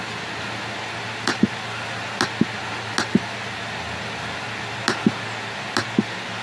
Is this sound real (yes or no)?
yes